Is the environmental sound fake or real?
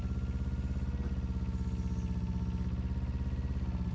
real